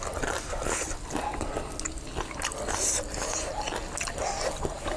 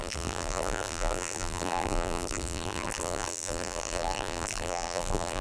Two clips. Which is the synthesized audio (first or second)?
second